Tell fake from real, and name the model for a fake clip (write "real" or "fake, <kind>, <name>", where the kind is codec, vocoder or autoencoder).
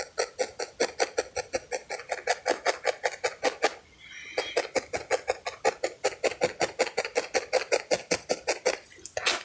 real